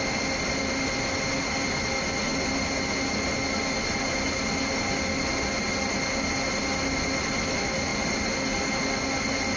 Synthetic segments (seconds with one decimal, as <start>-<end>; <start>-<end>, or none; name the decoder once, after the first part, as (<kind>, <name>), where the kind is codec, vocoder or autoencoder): none